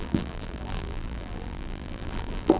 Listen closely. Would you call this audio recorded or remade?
remade